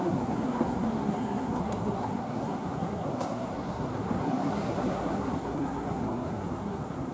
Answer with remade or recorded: remade